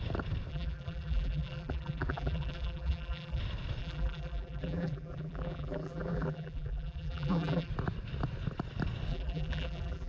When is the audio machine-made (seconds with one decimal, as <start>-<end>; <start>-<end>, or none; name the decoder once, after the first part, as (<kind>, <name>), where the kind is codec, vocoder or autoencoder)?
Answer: 0.5-3.4 (vocoder, BigVGAN v2); 3.8-7.7; 9.1-10.1